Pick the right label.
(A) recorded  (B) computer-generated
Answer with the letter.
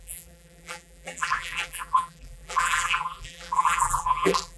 B